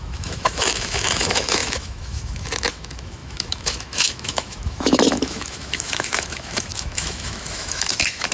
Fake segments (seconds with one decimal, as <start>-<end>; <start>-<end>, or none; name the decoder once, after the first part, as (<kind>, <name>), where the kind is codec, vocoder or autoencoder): 0.0-8.3 (autoencoder, DAC-VAE)